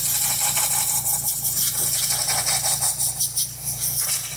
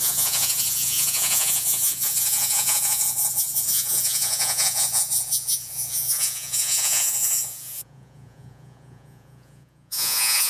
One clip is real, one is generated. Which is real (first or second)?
first